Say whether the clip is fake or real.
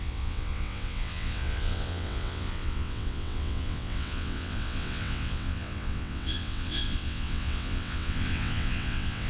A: fake